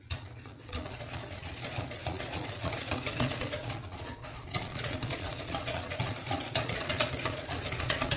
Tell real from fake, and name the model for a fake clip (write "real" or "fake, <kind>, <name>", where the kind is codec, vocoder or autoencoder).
fake, vocoder, Vocos